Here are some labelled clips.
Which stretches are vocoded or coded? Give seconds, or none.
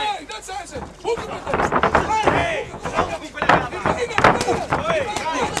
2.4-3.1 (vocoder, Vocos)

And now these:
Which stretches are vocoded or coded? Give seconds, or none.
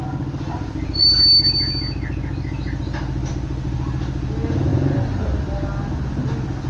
none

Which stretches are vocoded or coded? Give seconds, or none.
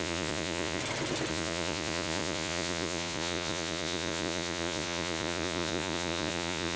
0.0-0.8 (vocoder, Vocos); 1.3-6.8